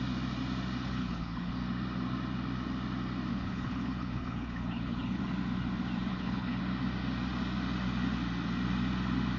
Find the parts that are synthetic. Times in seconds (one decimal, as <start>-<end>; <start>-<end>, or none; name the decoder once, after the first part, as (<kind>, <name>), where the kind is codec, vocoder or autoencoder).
0.8-1.5 (codec, HILCodec); 3.3-5.2; 6.1-6.6